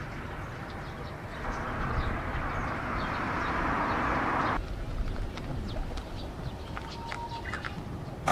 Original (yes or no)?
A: yes